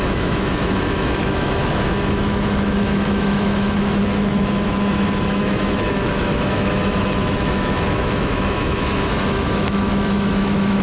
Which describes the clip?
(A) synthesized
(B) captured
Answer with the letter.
A